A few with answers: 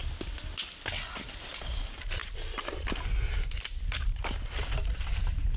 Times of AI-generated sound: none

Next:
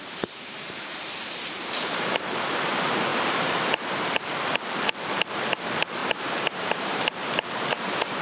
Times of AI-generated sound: 0.0-6.0 (vocoder, BigVGAN v2); 6.6-8.2

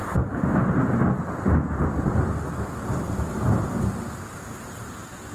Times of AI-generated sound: none

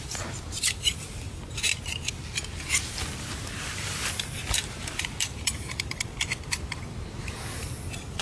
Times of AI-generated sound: 0.0-1.7 (vocoder, BigVGAN v2); 3.2-6.1; 7.1-8.2

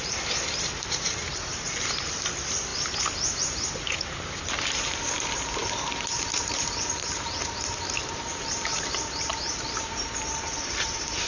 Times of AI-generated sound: 0.0-2.7 (vocoder, BigVGAN v2); 3.4-11.3

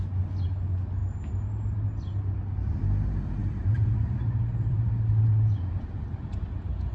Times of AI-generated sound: 3.4-6.5 (vocoder, BigVGAN v2)